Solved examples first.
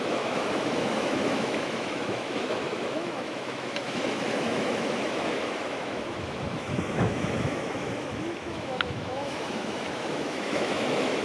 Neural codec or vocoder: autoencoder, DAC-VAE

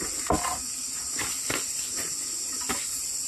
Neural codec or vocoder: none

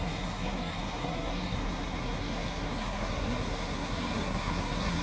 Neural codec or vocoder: codec, SNAC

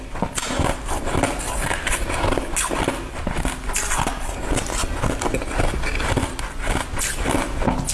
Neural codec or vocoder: none